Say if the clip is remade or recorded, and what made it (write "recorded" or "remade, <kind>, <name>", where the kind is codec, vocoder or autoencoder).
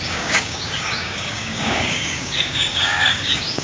remade, codec, DAC